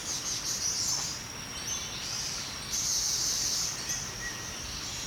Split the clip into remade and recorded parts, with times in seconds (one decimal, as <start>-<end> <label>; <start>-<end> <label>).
0.0-1.1 remade; 1.1-1.5 recorded; 1.5-4.6 remade; 4.6-5.1 recorded